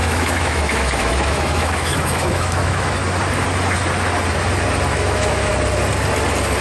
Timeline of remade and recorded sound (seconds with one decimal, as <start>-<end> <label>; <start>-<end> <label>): 0.0-3.0 remade; 3.0-4.9 recorded; 4.9-5.5 remade; 5.5-6.6 recorded